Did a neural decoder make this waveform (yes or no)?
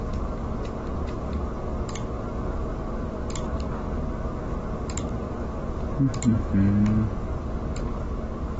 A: no